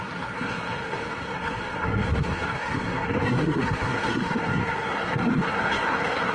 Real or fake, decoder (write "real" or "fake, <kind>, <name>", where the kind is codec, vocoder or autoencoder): fake, codec, SNAC